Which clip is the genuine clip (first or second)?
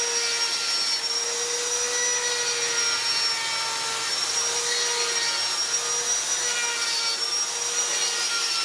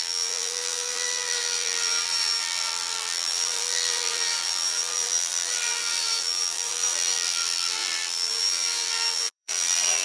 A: first